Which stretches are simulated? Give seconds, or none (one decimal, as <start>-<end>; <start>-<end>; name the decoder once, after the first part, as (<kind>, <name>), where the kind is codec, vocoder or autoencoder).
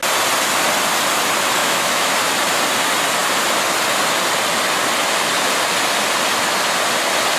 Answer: 1.6-2.1 (autoencoder, DAC-VAE)